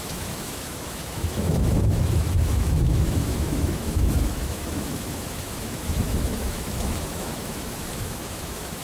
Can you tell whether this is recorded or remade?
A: remade